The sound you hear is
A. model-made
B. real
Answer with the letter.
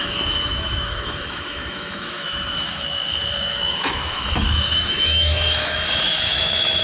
A